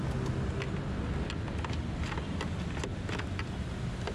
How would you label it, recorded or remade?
recorded